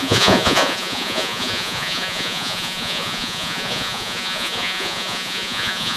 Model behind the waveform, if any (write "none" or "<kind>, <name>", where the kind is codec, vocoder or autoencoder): vocoder, Vocos